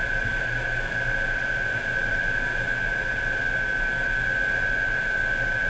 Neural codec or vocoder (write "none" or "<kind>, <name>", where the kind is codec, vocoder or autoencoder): none